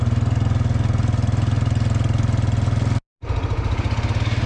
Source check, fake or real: real